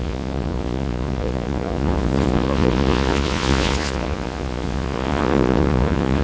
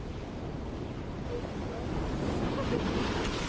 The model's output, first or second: first